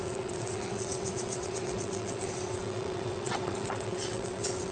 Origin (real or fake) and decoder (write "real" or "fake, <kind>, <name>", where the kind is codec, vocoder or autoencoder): fake, vocoder, WaveNeXt